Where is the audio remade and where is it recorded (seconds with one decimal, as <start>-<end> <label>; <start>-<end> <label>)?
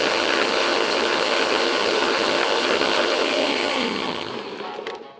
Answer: 0.0-4.3 remade; 4.3-5.2 recorded